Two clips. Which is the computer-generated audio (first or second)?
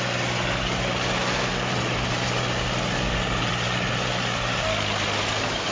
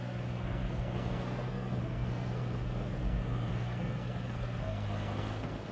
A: second